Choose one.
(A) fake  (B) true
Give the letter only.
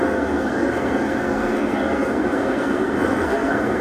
A